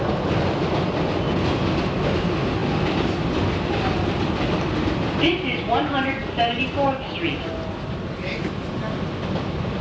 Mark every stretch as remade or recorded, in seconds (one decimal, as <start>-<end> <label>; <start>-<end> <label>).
0.0-9.8 recorded